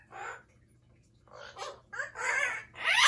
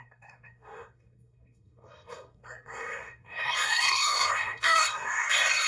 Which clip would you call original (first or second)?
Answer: first